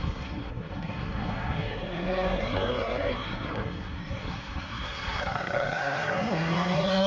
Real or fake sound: fake